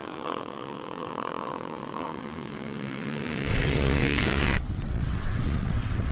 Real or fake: fake